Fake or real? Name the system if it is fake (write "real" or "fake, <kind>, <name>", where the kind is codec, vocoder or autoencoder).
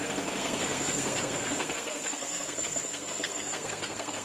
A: fake, codec, SNAC